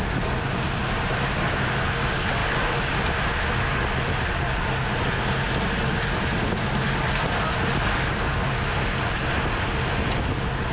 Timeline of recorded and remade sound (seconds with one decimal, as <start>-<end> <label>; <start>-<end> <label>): 0.0-10.7 recorded